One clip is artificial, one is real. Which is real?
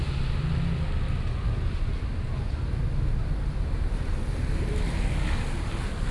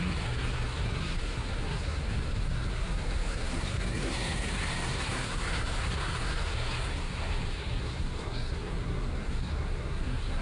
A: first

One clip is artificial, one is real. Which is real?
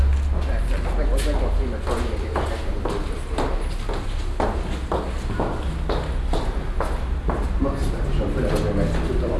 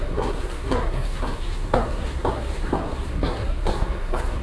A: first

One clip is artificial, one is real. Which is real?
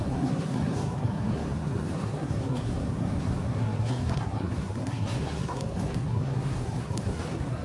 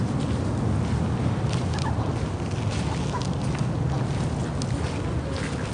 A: second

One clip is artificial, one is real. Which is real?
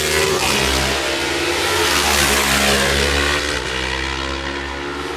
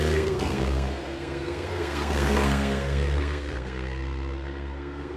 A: first